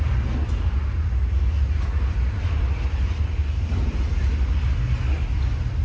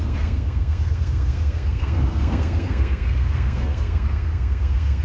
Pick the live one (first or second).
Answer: first